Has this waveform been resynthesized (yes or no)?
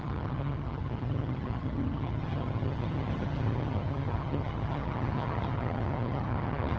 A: yes